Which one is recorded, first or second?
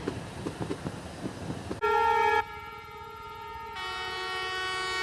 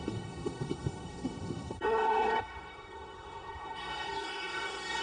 first